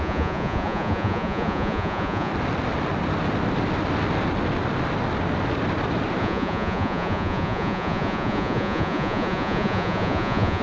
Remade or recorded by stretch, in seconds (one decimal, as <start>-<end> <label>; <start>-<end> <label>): 0.0-2.3 remade; 2.3-6.2 recorded; 6.2-10.6 remade